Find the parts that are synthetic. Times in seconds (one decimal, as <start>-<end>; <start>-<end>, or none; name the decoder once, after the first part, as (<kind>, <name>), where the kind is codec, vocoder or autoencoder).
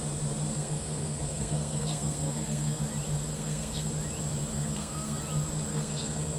0.5-2.8 (codec, SNAC); 3.3-3.9; 4.5-5.2; 5.7-6.4